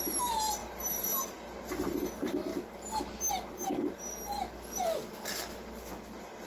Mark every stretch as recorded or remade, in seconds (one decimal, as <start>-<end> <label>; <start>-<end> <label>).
0.0-6.5 recorded